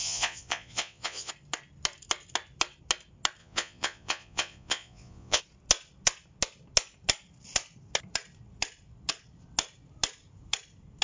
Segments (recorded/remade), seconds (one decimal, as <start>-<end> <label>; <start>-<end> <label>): 0.0-1.3 remade; 1.3-3.4 recorded; 3.4-5.4 remade; 5.4-11.0 recorded